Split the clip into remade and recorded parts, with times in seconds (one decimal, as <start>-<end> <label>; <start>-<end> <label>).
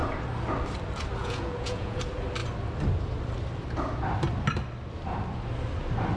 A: 0.0-1.2 recorded; 1.2-2.0 remade; 2.0-6.2 recorded